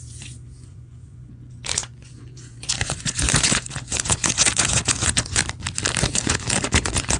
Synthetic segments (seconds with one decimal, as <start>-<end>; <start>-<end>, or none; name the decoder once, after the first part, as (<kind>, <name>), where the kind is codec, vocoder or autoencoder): 0.0-5.4 (vocoder, Vocos); 6.0-7.2